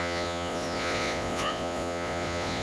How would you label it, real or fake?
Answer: fake